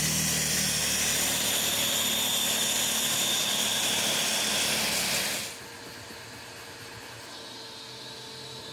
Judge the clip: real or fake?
real